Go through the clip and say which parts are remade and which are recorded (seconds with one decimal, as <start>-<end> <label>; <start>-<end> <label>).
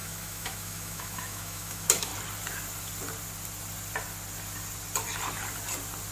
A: 0.0-2.1 remade; 2.1-6.1 recorded